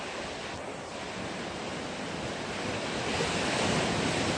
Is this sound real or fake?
real